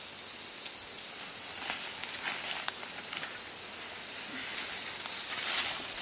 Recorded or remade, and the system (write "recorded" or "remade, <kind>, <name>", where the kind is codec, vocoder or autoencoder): recorded